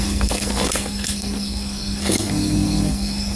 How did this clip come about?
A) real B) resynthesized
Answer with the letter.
B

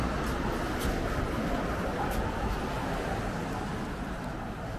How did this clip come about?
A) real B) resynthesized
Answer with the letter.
A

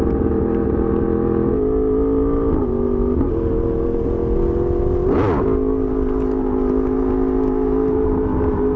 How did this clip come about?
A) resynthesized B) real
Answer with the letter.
B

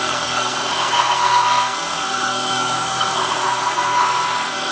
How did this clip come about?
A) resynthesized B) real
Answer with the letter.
A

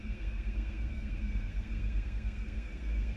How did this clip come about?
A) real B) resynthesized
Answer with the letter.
B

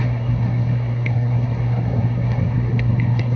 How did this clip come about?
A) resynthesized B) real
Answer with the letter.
A